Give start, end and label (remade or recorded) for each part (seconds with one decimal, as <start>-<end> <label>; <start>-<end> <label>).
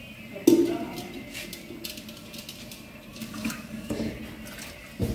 0.0-3.1 recorded; 3.1-4.2 remade; 4.2-5.1 recorded